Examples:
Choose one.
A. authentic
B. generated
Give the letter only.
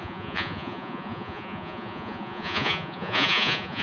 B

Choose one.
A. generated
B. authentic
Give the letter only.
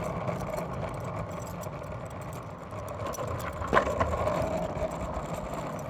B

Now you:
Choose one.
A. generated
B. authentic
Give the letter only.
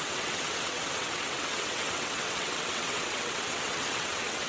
A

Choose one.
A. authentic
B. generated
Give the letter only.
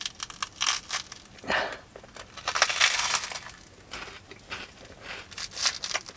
A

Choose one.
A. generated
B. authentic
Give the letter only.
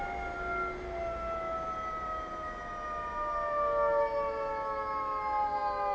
B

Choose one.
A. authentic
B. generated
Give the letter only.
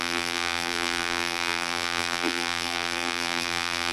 B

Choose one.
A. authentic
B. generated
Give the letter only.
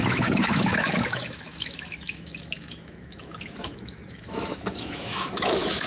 B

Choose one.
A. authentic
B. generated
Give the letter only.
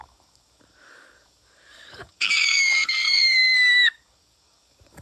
B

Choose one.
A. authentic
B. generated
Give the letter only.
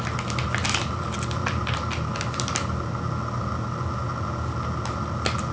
A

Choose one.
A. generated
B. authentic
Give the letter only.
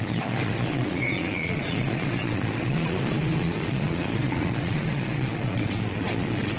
A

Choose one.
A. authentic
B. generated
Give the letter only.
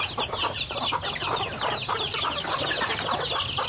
A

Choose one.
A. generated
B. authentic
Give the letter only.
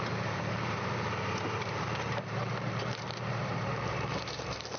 A